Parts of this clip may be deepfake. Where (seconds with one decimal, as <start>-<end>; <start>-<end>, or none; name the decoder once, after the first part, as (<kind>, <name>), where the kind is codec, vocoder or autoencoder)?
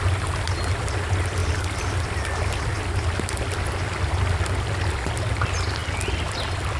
none